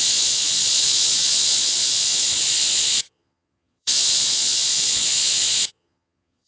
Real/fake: fake